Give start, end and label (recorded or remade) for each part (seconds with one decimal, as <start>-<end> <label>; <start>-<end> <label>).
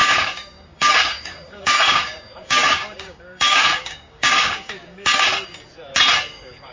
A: 0.0-5.3 remade; 5.3-6.3 recorded; 6.3-6.7 remade